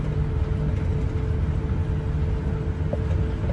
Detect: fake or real real